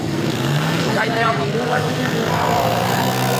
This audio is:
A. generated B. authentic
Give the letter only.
A